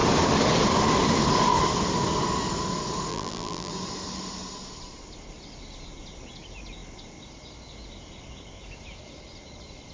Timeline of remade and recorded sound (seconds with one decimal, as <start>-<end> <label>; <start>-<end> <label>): 0.0-3.1 recorded; 3.1-3.7 remade; 3.7-9.9 recorded